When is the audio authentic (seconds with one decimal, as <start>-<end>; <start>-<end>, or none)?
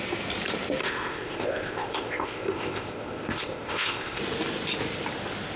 0.0-0.8; 4.2-5.6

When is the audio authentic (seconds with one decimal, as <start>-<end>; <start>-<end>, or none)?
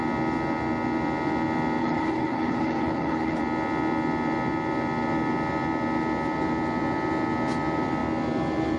0.0-1.8; 3.4-8.8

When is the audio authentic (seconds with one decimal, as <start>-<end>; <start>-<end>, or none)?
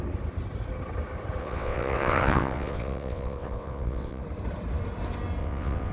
0.0-1.4; 4.2-5.4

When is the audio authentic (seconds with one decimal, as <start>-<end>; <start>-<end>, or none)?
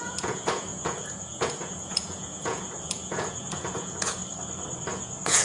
4.2-4.9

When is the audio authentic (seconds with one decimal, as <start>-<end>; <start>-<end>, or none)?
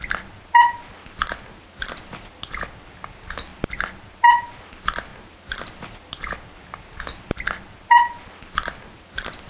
0.0-9.5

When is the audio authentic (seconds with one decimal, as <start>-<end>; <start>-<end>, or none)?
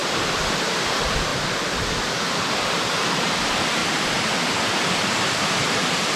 3.8-4.9